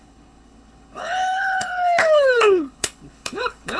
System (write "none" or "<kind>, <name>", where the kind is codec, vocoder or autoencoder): codec, HILCodec